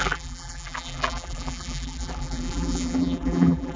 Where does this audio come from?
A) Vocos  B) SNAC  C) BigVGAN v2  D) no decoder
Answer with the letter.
C